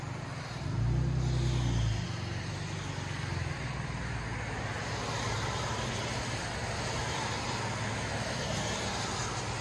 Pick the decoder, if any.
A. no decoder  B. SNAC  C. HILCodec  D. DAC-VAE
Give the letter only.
A